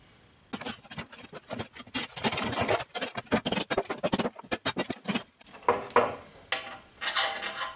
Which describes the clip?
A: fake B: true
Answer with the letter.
B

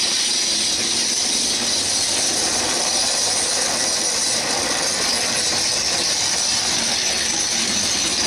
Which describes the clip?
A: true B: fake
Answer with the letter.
A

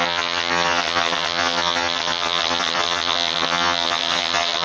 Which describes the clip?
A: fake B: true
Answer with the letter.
A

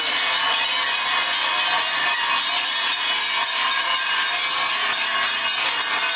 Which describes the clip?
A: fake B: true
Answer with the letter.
B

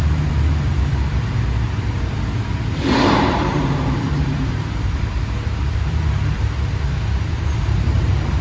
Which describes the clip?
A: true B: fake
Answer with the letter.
B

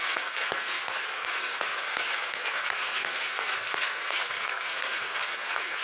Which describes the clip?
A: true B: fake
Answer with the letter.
B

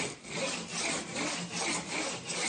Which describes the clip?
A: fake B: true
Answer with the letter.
B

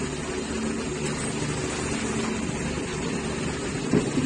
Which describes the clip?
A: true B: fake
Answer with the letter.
A